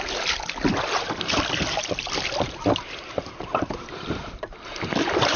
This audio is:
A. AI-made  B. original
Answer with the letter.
B